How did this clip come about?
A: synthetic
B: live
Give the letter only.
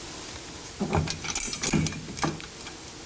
B